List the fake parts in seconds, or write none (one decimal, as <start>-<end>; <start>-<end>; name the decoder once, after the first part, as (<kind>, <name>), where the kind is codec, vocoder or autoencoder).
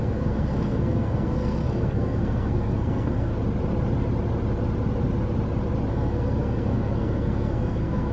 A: 0.0-3.3 (codec, SNAC); 5.9-8.1